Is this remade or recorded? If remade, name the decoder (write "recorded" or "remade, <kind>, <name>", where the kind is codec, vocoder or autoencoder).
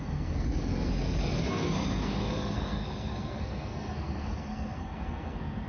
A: remade, codec, SNAC